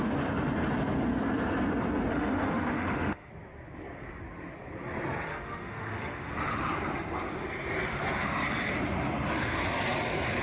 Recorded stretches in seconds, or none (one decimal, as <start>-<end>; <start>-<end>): 0.0-2.1; 3.3-5.3; 6.3-10.4